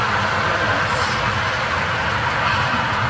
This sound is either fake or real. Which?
real